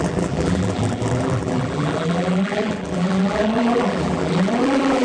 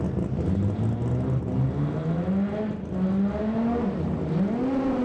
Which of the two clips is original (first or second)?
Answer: second